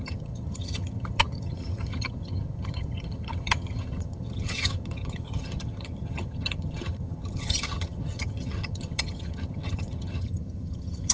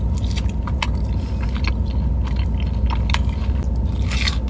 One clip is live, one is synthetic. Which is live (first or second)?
second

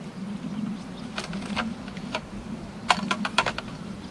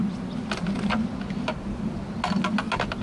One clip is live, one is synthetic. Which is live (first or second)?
second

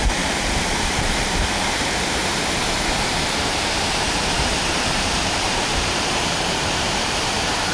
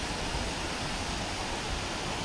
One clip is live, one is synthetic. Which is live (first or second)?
second